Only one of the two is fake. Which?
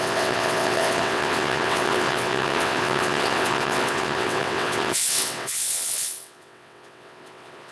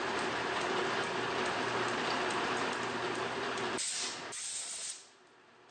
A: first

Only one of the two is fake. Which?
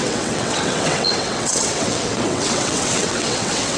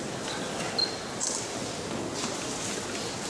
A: first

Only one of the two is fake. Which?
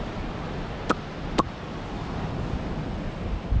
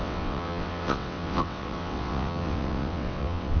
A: second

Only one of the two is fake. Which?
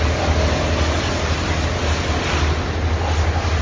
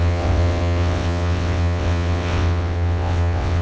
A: second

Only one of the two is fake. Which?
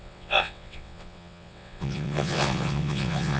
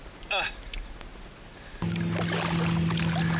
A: first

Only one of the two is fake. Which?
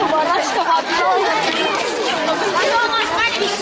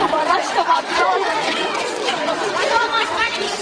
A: second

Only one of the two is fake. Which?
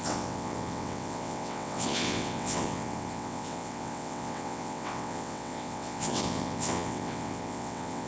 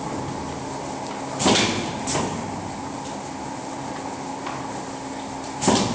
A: first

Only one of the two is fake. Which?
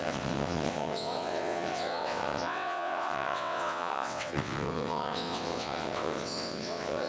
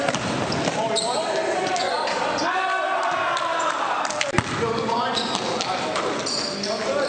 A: first